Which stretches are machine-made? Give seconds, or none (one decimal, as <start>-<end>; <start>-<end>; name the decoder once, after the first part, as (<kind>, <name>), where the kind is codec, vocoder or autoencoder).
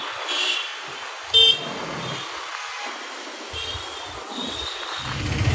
0.0-0.7 (vocoder, BigVGAN v2); 3.4-4.4